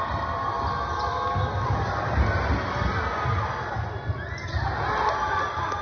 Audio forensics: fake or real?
real